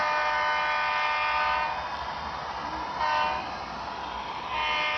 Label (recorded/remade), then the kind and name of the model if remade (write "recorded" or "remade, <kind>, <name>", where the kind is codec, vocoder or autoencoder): recorded